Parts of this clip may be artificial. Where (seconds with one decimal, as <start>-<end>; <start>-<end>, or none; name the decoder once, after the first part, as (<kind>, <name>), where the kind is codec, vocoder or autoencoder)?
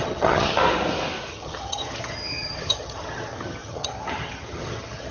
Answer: 0.0-0.6 (vocoder, HiFi-GAN); 1.3-5.1